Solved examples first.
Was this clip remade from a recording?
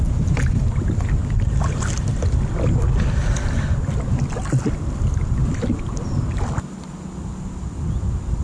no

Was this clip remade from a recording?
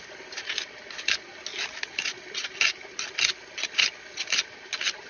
no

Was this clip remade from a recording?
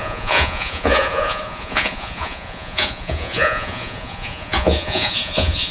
yes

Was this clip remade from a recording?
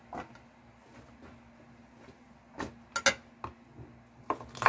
no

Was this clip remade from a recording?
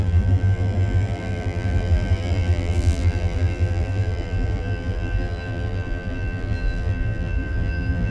yes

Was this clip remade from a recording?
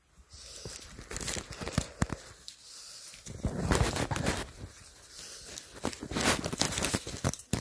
no